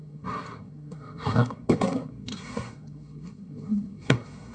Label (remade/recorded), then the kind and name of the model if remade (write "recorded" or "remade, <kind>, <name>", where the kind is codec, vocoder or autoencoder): remade, codec, SNAC